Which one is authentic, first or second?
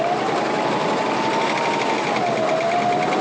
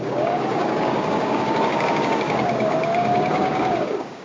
first